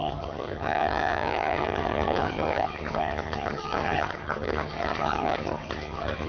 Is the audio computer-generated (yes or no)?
yes